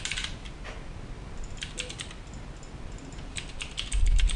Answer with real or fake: real